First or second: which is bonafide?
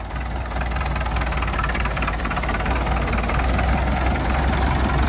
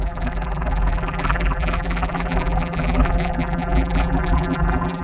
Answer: first